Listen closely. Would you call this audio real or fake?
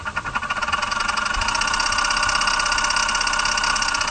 real